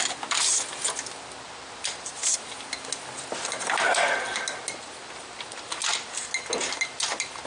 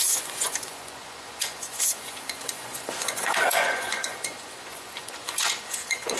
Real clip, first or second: first